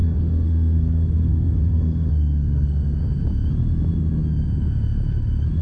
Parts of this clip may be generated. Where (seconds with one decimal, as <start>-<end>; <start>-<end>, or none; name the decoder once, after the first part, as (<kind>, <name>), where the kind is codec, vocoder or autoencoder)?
0.0-3.0 (codec, SNAC)